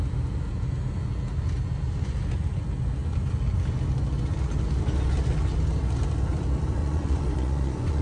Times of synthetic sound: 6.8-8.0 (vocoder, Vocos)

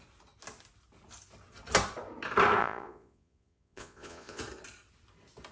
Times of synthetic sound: 2.6-4.4 (vocoder, Vocos)

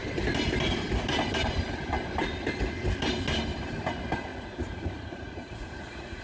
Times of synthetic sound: 4.3-6.2 (vocoder, Vocos)

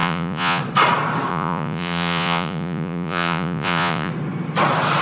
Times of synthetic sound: 0.0-0.6 (vocoder, Vocos); 1.3-4.1

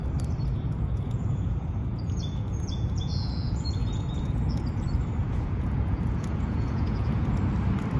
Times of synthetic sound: 0.5-4.6 (vocoder, Vocos); 5.2-7.3

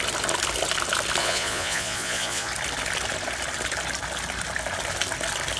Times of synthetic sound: 1.2-2.5 (vocoder, Vocos)

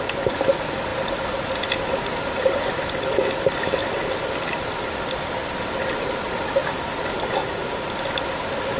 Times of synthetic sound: 7.4-7.9 (vocoder, Vocos)